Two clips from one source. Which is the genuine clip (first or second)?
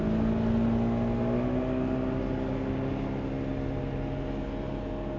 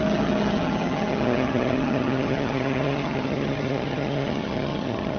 first